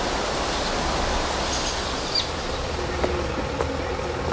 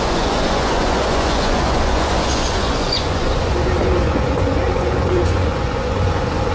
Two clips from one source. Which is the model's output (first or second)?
second